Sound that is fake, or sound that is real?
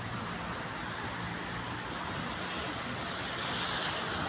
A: real